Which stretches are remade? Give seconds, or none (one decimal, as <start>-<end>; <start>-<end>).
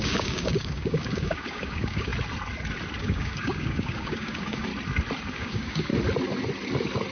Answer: 0.0-2.1; 3.0-4.7; 5.3-5.9